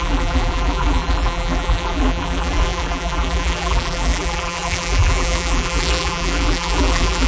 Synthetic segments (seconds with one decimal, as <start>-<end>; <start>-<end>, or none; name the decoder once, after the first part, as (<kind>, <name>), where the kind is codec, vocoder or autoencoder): 0.0-7.3 (vocoder, BigVGAN v2)